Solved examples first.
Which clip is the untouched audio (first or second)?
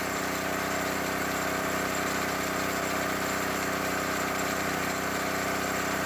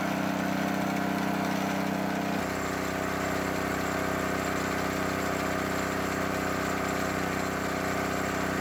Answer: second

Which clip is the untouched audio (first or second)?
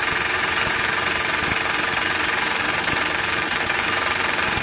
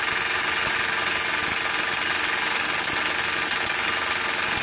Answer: second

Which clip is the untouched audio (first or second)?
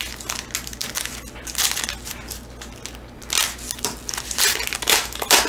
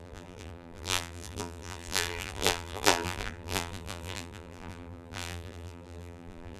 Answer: first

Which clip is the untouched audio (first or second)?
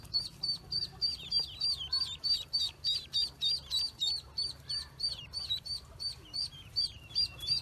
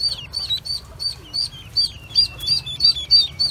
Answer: second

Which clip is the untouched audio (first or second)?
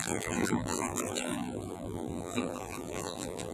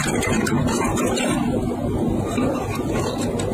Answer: second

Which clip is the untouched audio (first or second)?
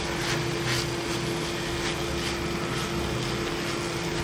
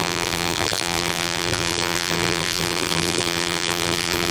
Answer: first